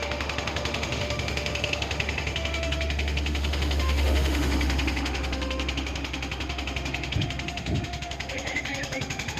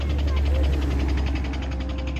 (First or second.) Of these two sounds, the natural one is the second